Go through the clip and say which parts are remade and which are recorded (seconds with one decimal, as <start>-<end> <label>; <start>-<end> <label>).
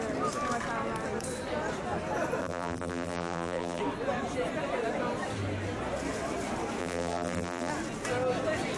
0.0-2.4 recorded; 2.4-3.8 remade; 3.8-6.8 recorded; 6.8-7.7 remade; 7.7-8.8 recorded